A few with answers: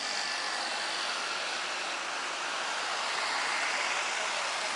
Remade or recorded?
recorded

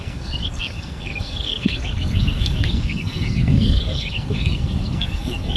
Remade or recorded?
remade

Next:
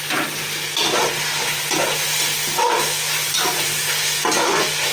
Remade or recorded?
recorded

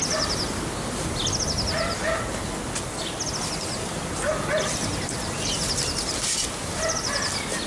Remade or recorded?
recorded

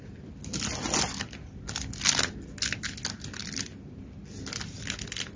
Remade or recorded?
recorded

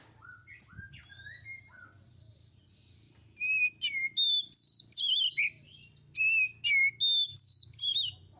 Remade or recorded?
recorded